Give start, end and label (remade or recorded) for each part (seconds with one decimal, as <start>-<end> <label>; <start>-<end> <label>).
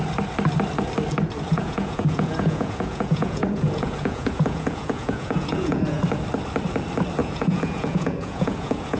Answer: 0.0-1.5 recorded; 1.5-6.0 remade; 6.0-7.2 recorded; 7.2-9.0 remade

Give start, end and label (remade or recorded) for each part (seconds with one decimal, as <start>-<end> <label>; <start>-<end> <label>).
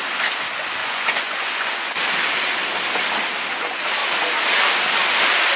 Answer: 0.0-0.8 recorded; 0.8-2.0 remade; 2.0-5.6 recorded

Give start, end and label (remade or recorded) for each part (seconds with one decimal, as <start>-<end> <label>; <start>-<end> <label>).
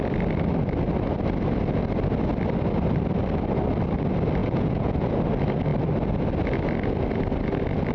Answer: 0.0-4.4 recorded; 4.4-5.2 remade; 5.2-7.9 recorded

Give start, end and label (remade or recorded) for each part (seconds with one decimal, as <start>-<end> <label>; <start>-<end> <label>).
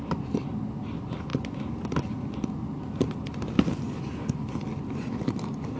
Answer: 0.0-5.8 recorded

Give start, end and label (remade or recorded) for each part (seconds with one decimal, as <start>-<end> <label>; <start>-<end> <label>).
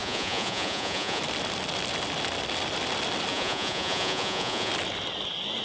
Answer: 0.0-1.2 remade; 1.2-3.3 recorded; 3.3-4.7 remade; 4.7-5.6 recorded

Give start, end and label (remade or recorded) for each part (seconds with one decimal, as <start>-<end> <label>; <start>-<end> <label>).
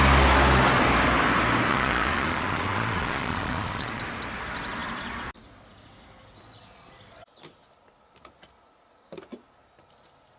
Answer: 0.0-1.7 recorded; 1.7-4.0 remade; 4.0-10.4 recorded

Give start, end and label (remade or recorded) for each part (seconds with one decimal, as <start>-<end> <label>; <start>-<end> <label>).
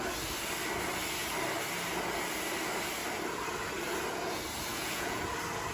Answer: 0.0-4.7 recorded; 4.7-5.2 remade; 5.2-5.7 recorded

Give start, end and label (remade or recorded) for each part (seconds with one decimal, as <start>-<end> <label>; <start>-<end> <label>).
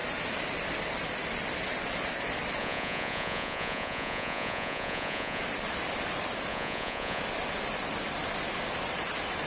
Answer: 0.0-2.6 recorded; 2.6-5.4 remade; 5.4-6.5 recorded; 6.5-7.2 remade; 7.2-9.5 recorded